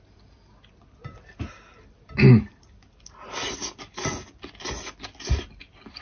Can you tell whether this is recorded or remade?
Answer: recorded